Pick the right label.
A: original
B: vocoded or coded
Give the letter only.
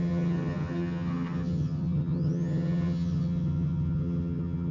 B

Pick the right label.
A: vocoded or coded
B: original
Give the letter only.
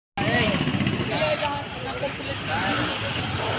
B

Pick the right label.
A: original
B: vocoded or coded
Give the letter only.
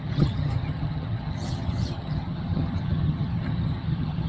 B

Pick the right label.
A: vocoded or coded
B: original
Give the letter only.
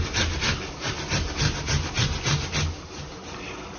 B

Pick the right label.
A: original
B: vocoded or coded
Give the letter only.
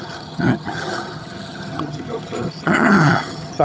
B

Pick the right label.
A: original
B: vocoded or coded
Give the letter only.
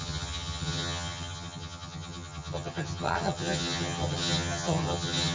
B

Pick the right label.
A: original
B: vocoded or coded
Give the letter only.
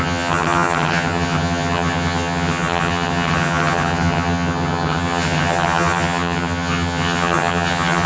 B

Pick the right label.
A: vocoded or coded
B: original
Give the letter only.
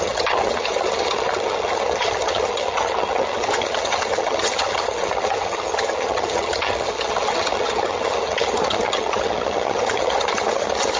A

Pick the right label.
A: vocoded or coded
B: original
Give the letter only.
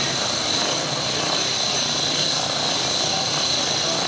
B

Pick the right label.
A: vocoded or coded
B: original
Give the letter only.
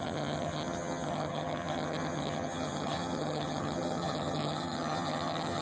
A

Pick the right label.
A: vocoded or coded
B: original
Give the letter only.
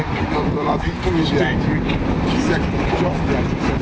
B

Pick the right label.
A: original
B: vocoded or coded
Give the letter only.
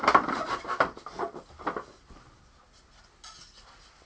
A